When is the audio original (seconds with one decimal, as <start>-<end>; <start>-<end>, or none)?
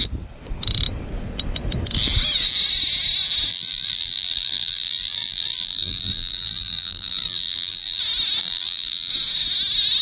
0.0-3.5; 8.0-8.4; 9.1-10.0